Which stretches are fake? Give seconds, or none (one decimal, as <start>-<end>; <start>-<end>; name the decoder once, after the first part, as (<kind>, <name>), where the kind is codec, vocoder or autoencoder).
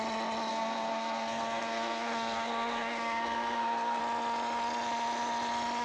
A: 0.5-4.0 (codec, SNAC)